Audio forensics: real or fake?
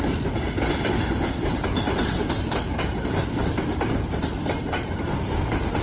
fake